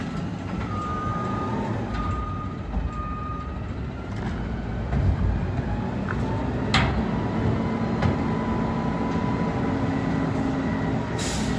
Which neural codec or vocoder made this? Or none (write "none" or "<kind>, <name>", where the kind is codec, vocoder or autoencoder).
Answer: none